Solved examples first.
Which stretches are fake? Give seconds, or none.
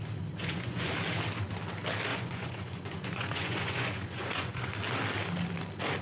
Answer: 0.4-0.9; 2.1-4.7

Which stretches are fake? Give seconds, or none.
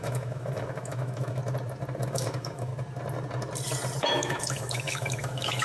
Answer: 0.0-1.4; 2.1-2.7; 4.0-5.6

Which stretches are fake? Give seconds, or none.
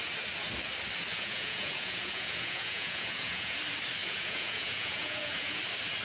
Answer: 1.1-3.6; 4.0-5.6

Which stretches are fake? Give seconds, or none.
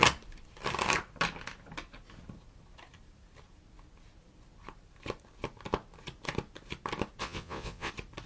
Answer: 7.2-7.9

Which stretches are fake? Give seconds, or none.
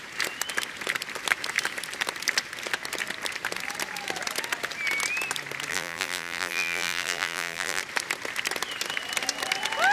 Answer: 5.7-7.8